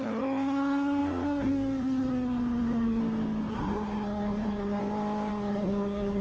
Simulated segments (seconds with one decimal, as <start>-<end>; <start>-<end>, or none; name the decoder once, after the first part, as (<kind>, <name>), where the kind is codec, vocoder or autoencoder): 0.0-3.0 (codec, SNAC); 3.5-4.8; 5.3-6.2